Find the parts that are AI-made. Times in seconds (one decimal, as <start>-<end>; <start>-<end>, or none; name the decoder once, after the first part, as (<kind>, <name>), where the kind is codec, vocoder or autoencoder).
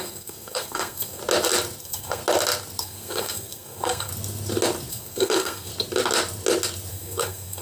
0.0-1.2 (codec, SNAC); 1.8-2.2; 2.8-4.1; 4.9-5.7; 6.9-7.6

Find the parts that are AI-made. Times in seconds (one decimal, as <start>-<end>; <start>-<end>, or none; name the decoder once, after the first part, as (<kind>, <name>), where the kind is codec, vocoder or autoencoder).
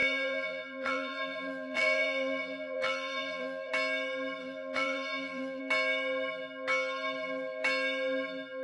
0.0-3.7 (vocoder, BigVGAN v2); 4.4-5.6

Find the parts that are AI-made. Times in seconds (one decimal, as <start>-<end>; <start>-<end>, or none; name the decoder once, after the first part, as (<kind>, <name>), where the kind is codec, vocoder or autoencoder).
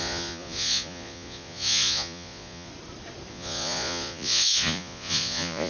0.0-2.7 (vocoder, Vocos); 3.3-5.7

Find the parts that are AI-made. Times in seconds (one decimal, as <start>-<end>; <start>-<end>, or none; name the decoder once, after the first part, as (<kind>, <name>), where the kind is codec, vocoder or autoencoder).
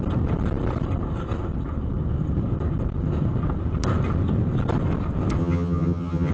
5.4-6.3 (vocoder, HiFi-GAN)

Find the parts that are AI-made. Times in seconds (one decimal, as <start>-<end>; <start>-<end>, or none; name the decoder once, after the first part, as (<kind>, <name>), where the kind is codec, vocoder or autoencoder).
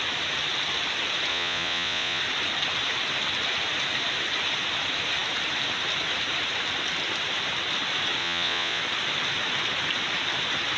1.3-2.2 (vocoder, Vocos); 8.2-8.8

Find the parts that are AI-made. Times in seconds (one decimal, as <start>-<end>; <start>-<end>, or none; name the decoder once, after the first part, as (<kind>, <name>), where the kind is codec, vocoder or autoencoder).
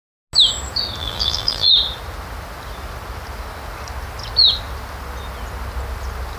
1.0-1.7 (vocoder, BigVGAN v2)